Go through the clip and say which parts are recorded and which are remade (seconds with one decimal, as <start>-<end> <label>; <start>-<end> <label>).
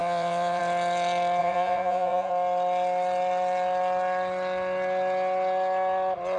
0.0-0.6 remade; 0.6-1.4 recorded; 1.4-2.3 remade; 2.3-6.4 recorded